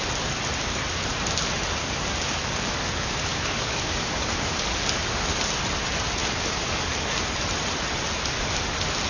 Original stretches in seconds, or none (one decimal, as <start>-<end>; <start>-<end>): 0.0-1.8; 5.5-6.2; 7.2-9.1